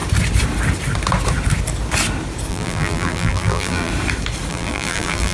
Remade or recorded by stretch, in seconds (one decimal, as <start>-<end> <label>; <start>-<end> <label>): 0.0-2.5 recorded; 2.5-3.9 remade; 3.9-4.5 recorded; 4.5-5.3 remade